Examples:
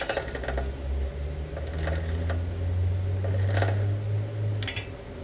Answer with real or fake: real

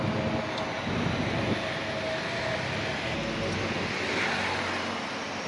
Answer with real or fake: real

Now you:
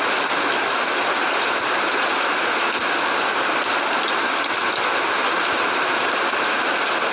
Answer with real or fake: real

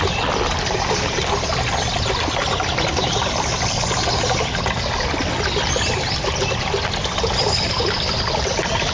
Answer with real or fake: real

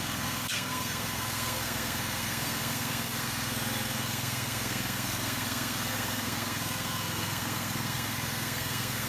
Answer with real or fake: fake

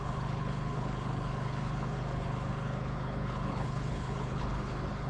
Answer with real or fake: fake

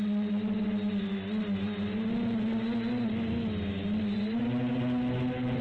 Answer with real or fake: real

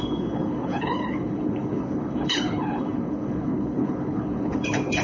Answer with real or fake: fake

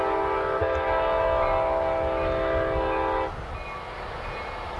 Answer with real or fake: real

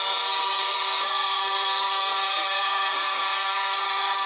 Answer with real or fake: fake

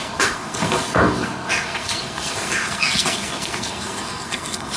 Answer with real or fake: fake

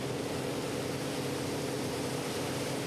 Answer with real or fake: real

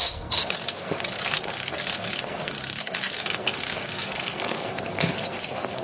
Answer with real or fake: fake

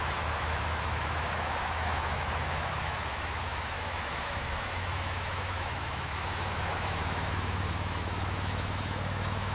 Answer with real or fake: fake